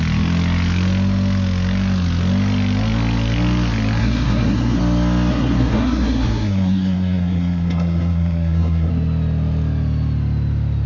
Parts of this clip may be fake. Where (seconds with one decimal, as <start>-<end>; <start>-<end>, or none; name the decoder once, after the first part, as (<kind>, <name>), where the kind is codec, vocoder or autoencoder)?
4.0-4.8 (codec, SNAC); 5.3-8.9